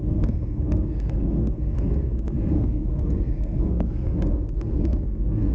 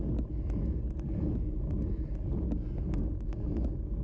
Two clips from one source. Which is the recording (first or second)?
second